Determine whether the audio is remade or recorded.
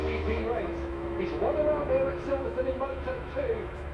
remade